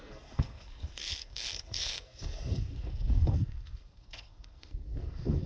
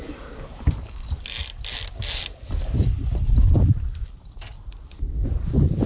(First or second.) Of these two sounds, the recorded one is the second